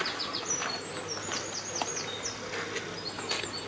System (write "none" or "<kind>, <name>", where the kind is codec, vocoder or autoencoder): none